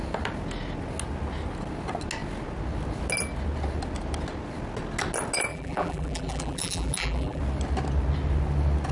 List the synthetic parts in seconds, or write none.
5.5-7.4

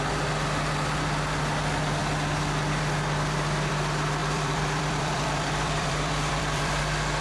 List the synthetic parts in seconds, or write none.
4.2-6.8

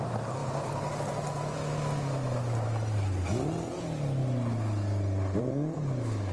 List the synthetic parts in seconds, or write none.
0.4-1.0

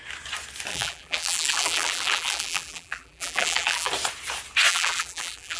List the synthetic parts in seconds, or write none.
0.7-3.9; 4.7-5.6

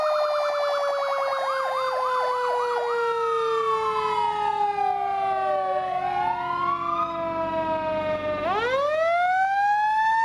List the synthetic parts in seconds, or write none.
none

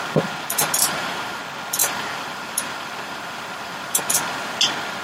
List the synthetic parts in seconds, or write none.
0.8-1.4; 1.8-4.0

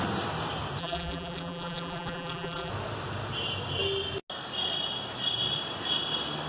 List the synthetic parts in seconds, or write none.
0.8-2.7